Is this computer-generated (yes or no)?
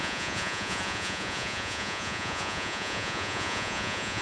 yes